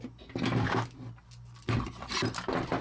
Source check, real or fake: real